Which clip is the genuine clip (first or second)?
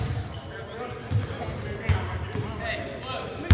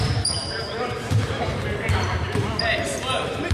first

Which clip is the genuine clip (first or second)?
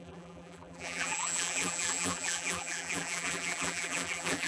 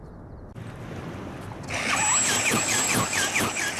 second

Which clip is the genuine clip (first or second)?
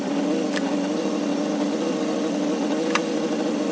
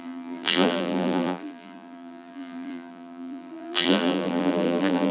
first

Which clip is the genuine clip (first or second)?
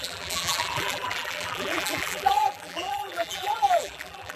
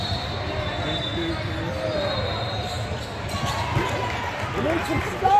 second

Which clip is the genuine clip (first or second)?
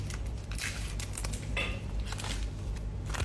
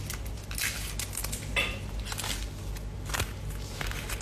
second